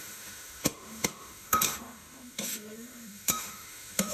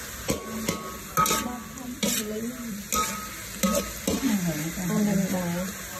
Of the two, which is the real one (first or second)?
second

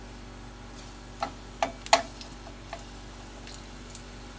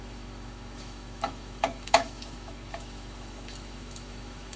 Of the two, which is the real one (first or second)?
first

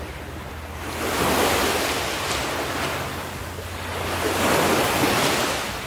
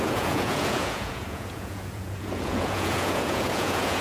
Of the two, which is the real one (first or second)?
first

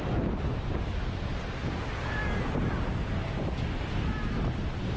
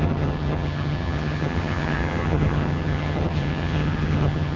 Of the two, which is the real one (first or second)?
first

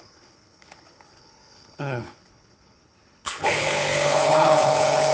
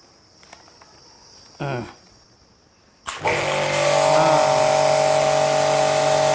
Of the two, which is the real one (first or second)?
second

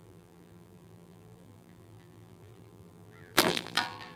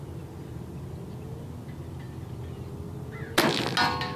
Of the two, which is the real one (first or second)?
second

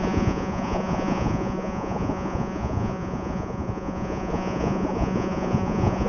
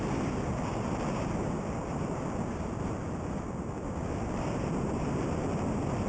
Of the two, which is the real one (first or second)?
second